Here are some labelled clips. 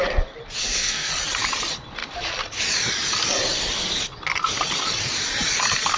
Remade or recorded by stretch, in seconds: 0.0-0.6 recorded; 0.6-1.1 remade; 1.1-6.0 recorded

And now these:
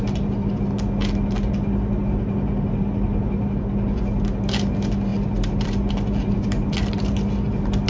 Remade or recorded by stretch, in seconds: 0.0-7.9 recorded

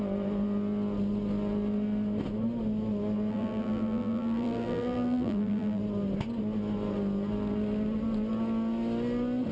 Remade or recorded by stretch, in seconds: 0.0-3.3 recorded; 3.3-5.8 remade; 5.8-9.5 recorded

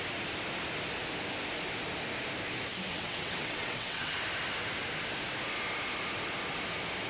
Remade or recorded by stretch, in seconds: 0.0-2.9 recorded; 2.9-4.2 remade; 4.2-7.1 recorded

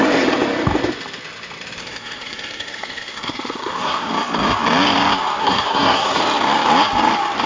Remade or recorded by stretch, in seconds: 0.0-1.8 recorded; 1.8-4.1 remade; 4.1-5.4 recorded; 5.4-6.2 remade; 6.2-7.5 recorded

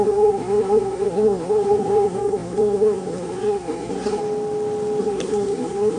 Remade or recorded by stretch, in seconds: 0.0-4.2 remade; 4.2-5.0 recorded; 5.0-6.0 remade